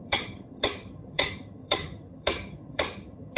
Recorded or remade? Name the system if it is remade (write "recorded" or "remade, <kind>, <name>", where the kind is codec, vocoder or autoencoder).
remade, vocoder, HiFi-GAN